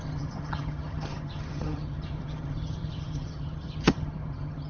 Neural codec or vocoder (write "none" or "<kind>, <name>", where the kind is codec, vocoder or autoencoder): vocoder, HiFi-GAN